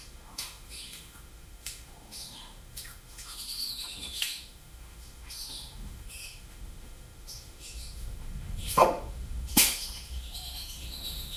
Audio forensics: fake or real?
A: fake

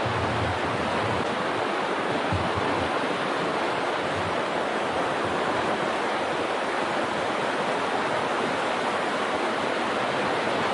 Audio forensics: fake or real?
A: real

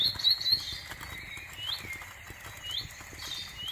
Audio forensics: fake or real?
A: real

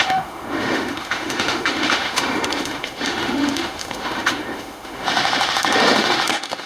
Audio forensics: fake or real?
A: fake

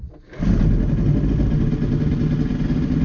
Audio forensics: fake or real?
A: real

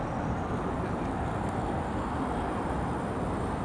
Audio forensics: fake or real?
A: real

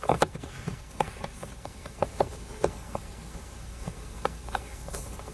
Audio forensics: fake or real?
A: fake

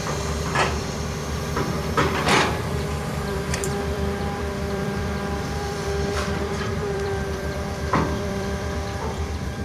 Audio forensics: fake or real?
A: fake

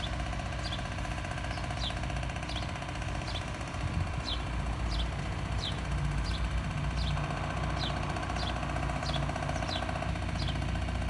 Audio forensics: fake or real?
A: real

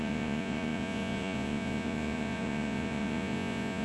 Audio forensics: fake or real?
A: fake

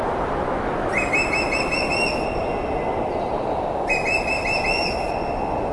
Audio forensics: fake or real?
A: real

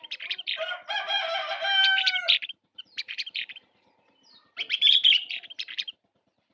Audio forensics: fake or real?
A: fake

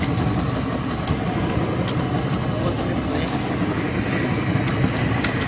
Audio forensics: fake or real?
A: real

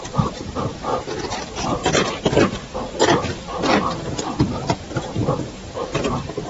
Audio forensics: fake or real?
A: real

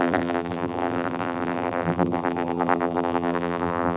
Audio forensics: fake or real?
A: fake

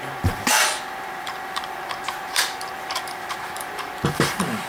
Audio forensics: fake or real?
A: fake